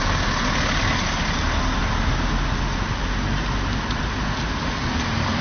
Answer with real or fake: real